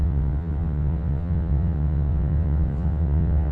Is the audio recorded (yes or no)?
no